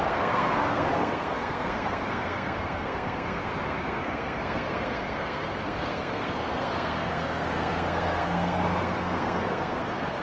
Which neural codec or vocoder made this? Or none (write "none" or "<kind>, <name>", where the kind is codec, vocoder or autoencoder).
codec, SNAC